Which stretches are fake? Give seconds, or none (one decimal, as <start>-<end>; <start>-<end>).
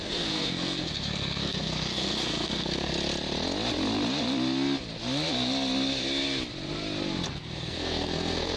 0.0-2.9; 7.3-8.6